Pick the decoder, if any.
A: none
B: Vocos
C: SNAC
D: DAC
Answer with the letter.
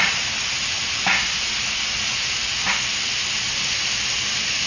A